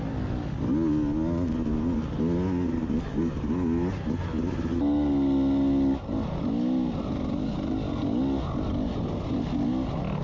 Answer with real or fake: real